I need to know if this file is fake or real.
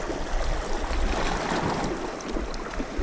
real